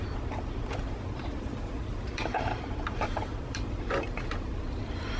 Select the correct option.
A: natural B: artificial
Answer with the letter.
B